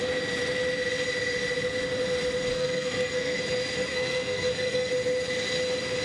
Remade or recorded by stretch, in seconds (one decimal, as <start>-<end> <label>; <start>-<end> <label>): 0.0-2.5 recorded; 2.5-3.4 remade; 3.4-3.9 recorded; 3.9-4.9 remade; 4.9-6.0 recorded